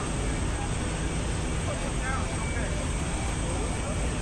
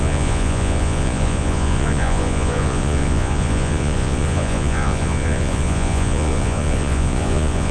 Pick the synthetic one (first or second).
second